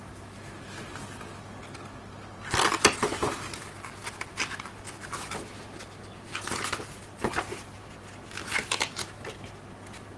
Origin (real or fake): real